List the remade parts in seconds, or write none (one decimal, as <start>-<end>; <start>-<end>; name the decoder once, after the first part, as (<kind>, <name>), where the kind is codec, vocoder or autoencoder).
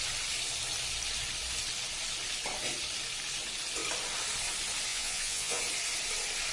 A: 4.9-5.6 (vocoder, Vocos)